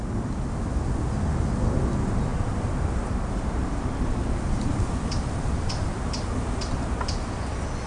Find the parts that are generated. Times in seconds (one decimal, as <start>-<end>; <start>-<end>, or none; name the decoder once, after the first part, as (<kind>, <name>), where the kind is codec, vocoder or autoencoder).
2.3-6.0 (vocoder, BigVGAN v2)